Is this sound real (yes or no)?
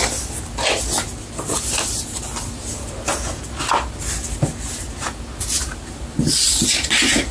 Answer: yes